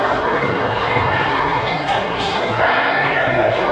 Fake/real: fake